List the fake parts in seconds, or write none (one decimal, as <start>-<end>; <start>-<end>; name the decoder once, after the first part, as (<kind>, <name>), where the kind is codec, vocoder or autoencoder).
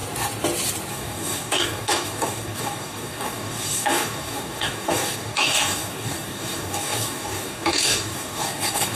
0.9-9.0 (codec, DAC)